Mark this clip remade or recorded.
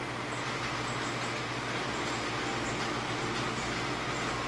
recorded